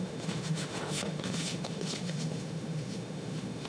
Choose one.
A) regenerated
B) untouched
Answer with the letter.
A